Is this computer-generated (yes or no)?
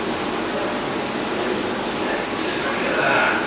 yes